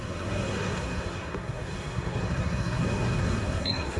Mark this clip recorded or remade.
remade